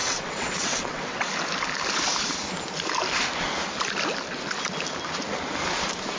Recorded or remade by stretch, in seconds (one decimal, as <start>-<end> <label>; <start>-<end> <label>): 0.0-1.2 remade; 1.2-6.2 recorded